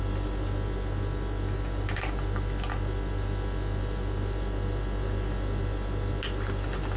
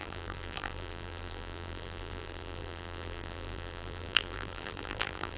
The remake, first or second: second